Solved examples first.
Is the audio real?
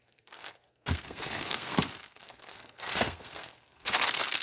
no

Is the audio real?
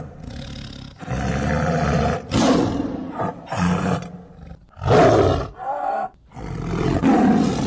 yes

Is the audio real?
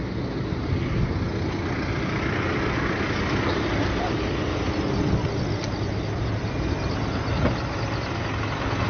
yes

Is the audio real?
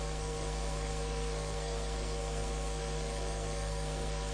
no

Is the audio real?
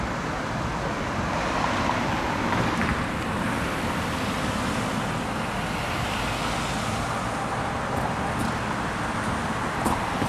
yes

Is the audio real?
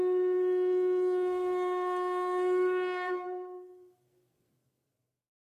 no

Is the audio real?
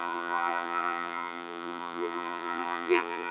no